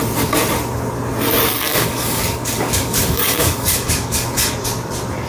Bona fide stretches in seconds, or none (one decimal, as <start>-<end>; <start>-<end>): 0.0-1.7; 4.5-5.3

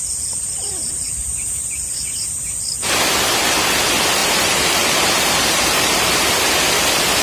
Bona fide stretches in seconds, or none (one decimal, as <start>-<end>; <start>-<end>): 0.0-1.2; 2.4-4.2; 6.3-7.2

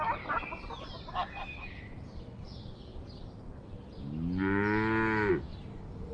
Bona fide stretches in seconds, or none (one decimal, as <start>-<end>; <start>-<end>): 0.0-6.1

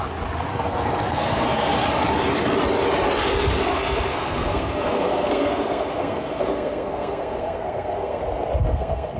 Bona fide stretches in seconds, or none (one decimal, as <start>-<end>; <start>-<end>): 0.0-0.5; 1.7-3.7; 8.2-8.6